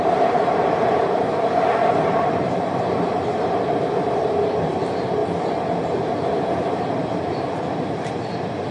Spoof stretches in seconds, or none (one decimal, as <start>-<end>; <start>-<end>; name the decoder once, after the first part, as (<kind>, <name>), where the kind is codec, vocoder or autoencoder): 0.0-5.2 (vocoder, BigVGAN v2); 5.8-8.7